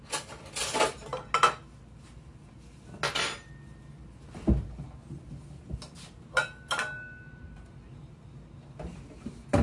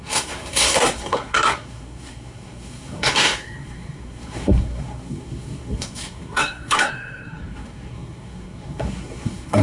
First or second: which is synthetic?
second